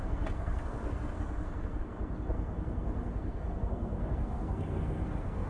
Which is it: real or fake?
fake